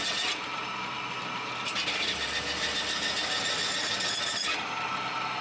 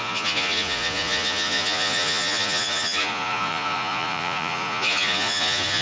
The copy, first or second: second